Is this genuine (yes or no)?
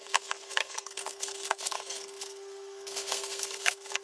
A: no